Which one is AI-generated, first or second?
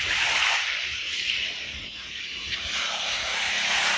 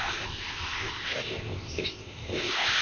second